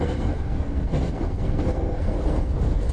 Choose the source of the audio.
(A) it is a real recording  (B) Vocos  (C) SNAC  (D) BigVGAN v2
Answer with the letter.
C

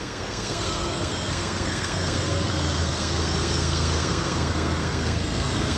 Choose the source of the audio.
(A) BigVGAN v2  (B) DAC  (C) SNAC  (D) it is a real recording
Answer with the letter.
C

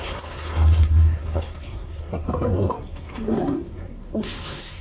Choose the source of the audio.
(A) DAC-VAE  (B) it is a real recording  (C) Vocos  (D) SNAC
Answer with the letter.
D